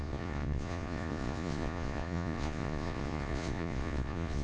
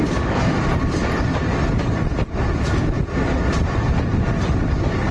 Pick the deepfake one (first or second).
first